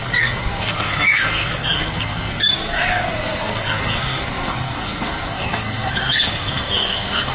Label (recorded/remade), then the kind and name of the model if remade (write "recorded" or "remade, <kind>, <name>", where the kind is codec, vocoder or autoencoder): remade, codec, SNAC